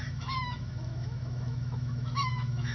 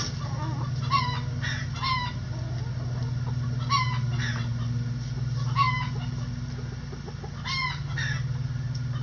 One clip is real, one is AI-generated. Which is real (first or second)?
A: second